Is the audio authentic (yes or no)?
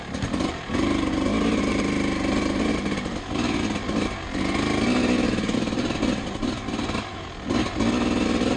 yes